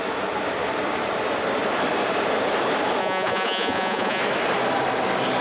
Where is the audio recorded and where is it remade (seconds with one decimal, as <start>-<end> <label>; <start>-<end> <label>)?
0.0-3.0 recorded; 3.0-4.2 remade; 4.2-5.4 recorded